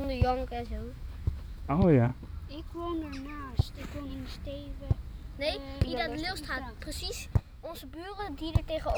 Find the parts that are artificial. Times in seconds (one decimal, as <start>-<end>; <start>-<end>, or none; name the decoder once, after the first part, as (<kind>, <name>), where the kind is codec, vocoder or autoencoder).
0.0-1.7 (autoencoder, DAC-VAE); 7.4-8.2